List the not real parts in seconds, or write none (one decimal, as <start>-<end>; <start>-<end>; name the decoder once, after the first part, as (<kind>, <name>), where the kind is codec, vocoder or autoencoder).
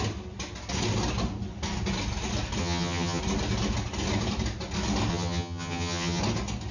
2.6-3.2 (vocoder, HiFi-GAN); 5.1-6.2